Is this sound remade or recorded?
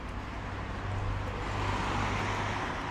recorded